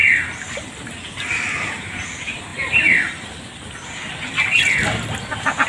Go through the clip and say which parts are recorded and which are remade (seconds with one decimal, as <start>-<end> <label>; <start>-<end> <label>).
0.0-2.5 remade; 2.5-5.0 recorded; 5.0-5.7 remade